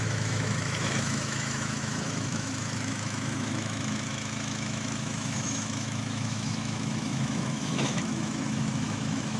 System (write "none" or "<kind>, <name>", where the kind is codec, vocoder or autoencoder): autoencoder, DAC-VAE